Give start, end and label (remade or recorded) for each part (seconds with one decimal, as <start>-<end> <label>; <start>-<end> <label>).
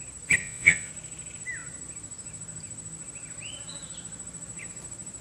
0.0-0.4 recorded; 0.4-0.9 remade; 0.9-5.2 recorded